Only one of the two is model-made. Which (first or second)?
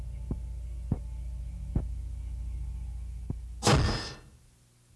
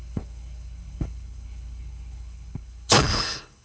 second